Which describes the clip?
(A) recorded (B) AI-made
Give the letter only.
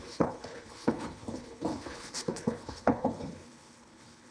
B